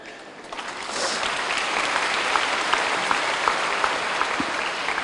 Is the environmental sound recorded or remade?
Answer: recorded